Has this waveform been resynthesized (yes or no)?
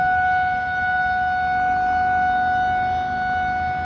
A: no